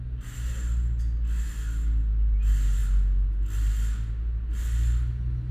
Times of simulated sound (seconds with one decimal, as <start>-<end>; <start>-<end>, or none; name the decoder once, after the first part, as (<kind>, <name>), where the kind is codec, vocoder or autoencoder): none